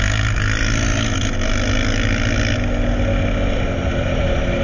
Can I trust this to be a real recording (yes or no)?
yes